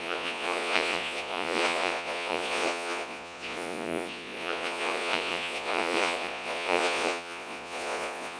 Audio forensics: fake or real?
fake